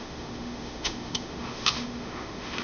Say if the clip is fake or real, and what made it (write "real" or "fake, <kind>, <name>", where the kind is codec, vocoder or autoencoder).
fake, autoencoder, DAC-VAE